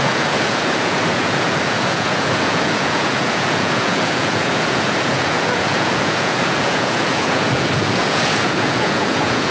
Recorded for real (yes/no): no